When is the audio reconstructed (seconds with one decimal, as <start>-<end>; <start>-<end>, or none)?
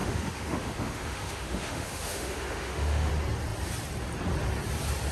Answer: 0.0-3.1